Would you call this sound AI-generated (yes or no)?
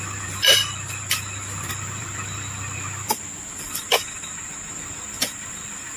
no